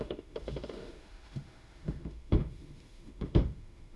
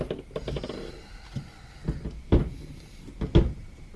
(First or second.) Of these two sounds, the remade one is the first